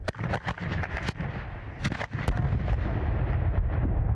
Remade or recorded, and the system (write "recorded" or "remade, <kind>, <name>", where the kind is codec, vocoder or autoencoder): recorded